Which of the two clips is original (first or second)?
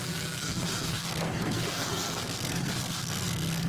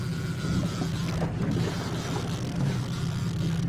second